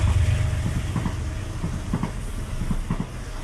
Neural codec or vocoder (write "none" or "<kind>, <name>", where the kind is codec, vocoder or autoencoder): none